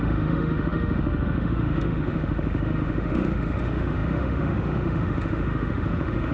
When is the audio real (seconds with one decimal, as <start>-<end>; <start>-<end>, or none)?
none